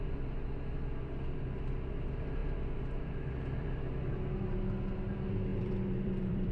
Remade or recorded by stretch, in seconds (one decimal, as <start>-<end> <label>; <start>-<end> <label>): 0.0-5.5 recorded; 5.5-6.5 remade